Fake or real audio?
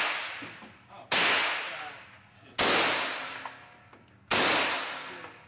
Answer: real